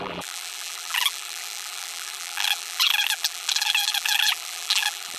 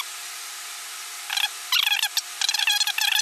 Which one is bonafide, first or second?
second